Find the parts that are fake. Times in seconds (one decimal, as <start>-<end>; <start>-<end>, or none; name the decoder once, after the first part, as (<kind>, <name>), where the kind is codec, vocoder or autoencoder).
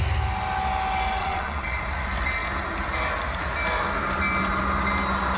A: 1.2-1.8 (vocoder, Vocos)